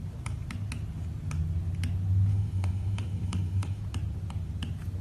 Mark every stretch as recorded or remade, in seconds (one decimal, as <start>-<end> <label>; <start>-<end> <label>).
0.0-2.3 recorded; 2.3-3.8 remade; 3.8-5.0 recorded